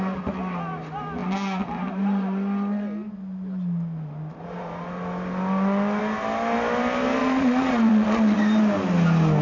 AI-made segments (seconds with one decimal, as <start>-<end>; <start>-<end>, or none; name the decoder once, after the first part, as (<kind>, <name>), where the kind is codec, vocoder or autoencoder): 7.2-8.4 (vocoder, Vocos)